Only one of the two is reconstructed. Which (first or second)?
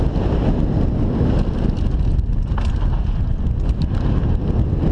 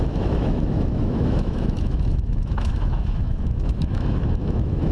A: second